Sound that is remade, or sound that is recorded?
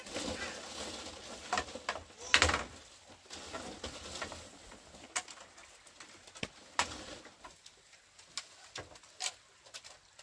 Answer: recorded